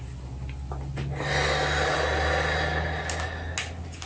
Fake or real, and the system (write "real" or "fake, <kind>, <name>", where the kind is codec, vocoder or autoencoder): real